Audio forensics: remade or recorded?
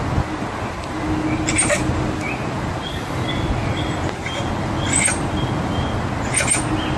recorded